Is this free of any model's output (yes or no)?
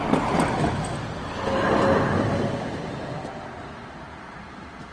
yes